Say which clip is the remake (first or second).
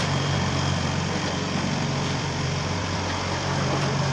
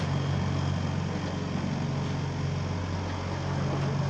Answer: first